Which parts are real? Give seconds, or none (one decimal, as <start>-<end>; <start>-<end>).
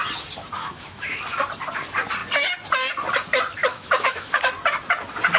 0.0-0.6; 1.2-3.6; 4.4-5.4